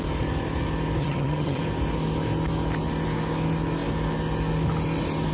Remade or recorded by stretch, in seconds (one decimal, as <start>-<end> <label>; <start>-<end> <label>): 0.0-1.0 recorded; 1.0-1.6 remade; 1.6-5.3 recorded